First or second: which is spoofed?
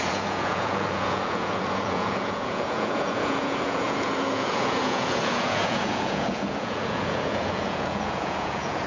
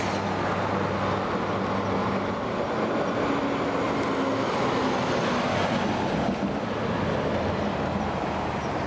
first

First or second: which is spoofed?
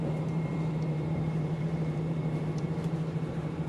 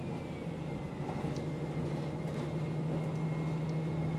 first